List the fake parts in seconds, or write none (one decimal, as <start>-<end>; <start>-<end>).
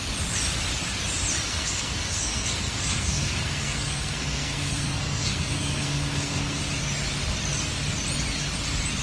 1.5-6.6